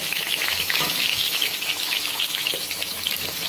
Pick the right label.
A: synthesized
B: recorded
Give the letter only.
A